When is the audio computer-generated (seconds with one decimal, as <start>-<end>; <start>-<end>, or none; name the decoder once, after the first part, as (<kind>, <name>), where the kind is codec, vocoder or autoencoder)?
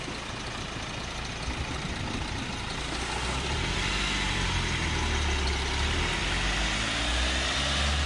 none